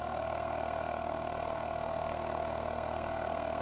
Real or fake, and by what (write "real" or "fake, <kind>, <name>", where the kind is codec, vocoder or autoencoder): fake, codec, SNAC